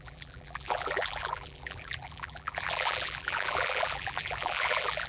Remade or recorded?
remade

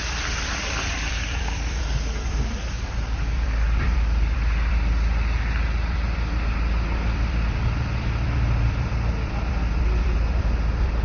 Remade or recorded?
remade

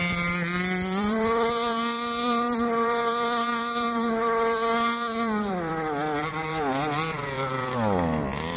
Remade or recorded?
remade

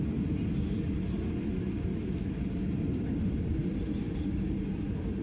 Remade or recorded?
remade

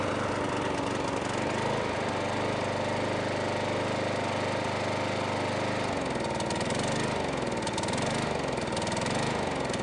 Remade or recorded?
recorded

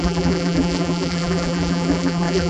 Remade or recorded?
remade